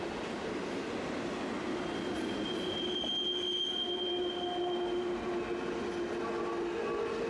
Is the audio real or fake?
real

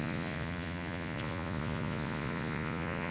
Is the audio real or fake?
fake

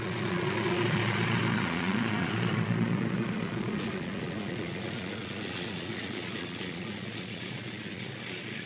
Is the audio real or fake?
fake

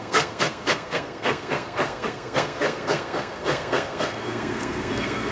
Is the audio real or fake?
fake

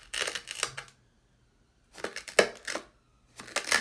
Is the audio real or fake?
real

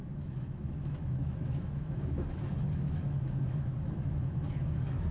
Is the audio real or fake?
fake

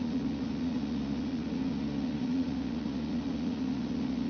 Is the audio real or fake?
fake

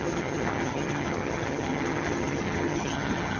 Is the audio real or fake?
fake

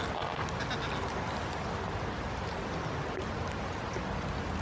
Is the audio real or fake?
real